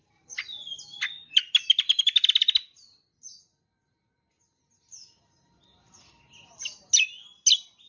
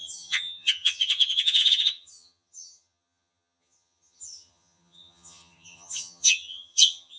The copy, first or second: second